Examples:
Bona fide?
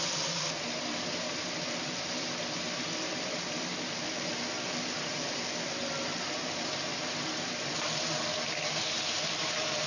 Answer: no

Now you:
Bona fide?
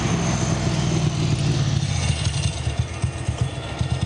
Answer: yes